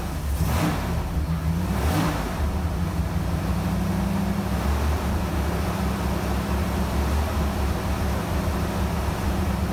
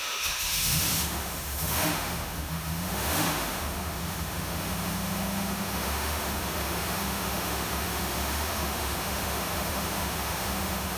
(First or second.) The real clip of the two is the first